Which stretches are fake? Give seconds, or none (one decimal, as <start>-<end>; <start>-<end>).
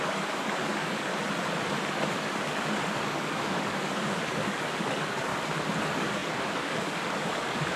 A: 0.0-1.1; 2.1-5.3; 5.8-7.8